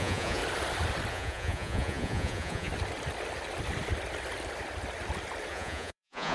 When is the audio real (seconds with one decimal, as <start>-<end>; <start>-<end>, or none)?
0.4-1.1; 2.7-5.5